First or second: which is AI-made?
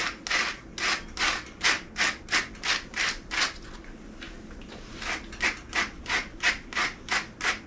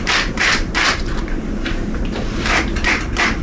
second